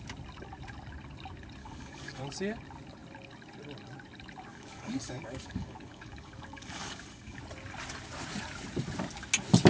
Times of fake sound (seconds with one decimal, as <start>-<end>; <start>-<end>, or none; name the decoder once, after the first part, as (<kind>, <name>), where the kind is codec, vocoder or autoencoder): 1.6-2.2 (codec, DAC); 4.5-7.4